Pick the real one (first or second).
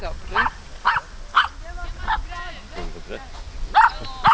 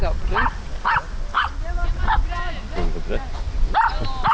first